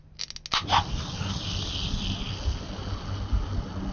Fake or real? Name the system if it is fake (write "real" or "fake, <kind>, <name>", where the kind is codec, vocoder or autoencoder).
real